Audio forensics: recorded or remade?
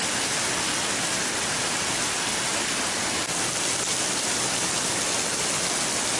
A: recorded